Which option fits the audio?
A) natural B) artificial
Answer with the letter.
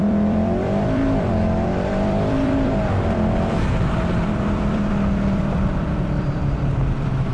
B